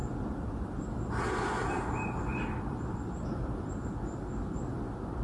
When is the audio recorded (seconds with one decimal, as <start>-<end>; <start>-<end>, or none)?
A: 1.7-2.3; 3.7-5.2